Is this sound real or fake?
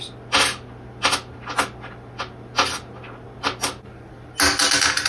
real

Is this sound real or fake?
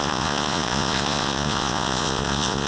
fake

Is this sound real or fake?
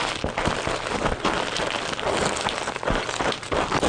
real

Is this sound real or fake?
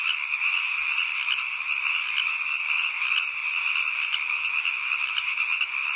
real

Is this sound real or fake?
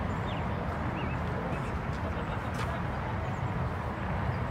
real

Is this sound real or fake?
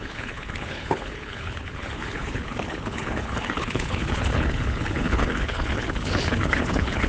fake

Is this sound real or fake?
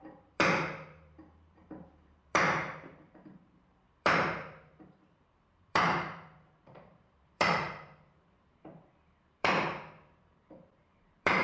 fake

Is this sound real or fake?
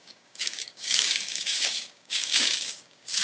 fake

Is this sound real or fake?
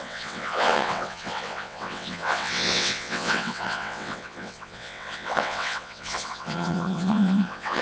fake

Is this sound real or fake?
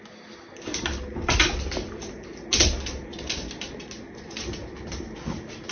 real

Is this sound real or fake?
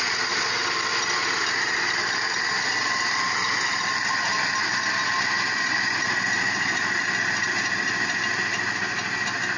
real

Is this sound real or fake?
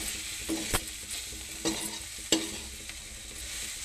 real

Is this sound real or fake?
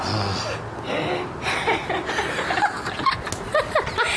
real